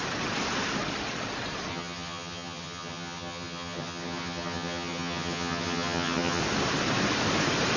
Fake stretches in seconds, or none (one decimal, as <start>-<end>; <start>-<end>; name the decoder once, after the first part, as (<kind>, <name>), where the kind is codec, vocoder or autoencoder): 1.7-6.4 (vocoder, HiFi-GAN)